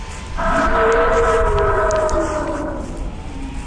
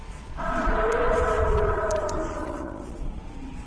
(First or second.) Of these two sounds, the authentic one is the first